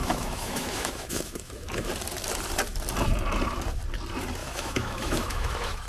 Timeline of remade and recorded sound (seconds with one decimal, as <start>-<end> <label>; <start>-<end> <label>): 0.0-1.9 remade; 1.9-4.4 recorded; 4.4-5.9 remade